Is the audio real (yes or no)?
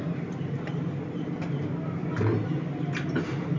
yes